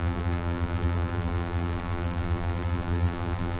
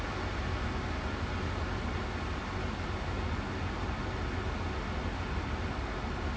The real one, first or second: second